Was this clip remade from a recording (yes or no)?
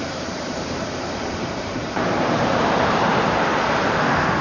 yes